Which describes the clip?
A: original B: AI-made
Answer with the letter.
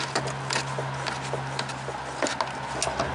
A